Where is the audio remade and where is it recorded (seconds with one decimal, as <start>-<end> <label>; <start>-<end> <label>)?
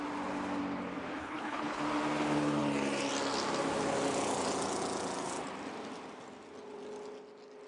0.0-1.2 recorded; 1.2-1.8 remade; 1.8-7.7 recorded